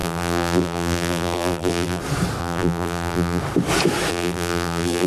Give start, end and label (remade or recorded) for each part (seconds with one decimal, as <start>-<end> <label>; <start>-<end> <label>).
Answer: 0.0-2.0 remade; 2.0-2.4 recorded; 2.4-3.4 remade; 3.4-4.1 recorded; 4.1-5.1 remade